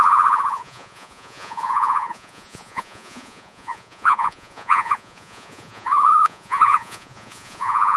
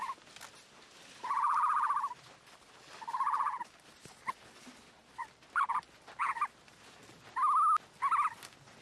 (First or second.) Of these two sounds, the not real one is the first